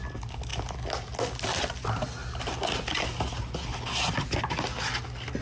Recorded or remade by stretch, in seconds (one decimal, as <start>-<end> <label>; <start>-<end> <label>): 0.0-5.4 recorded